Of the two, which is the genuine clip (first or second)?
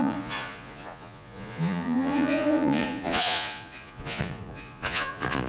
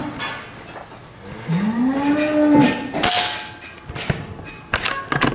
second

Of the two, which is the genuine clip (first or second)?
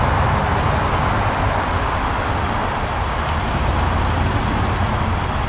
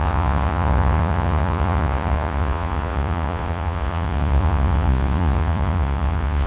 first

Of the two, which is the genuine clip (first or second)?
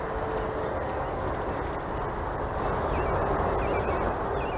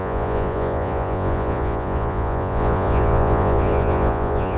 first